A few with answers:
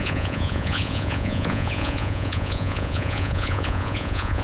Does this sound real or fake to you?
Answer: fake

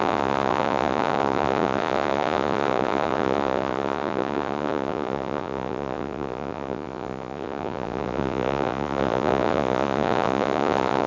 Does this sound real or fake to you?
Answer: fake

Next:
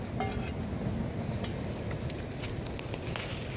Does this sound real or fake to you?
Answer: real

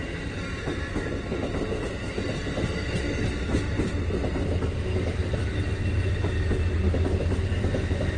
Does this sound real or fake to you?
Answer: real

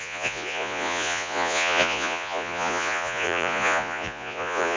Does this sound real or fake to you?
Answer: fake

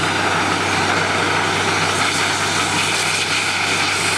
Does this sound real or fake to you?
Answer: real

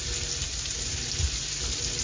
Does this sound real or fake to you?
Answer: real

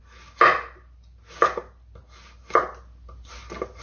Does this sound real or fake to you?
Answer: real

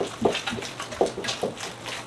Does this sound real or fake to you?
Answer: real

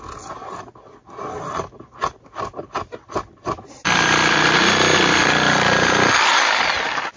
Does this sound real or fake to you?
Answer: real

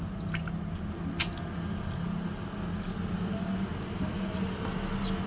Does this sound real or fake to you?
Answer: real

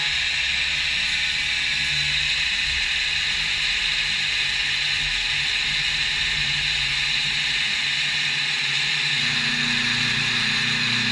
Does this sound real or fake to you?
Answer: real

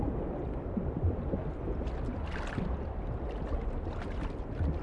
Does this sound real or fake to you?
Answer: real